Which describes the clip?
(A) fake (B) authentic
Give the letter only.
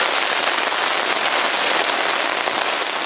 B